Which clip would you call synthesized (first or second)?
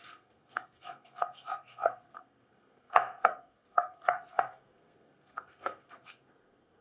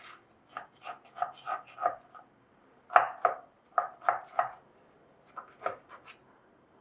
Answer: first